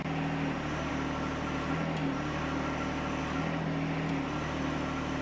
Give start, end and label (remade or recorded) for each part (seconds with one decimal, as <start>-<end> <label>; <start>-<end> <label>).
0.0-5.2 recorded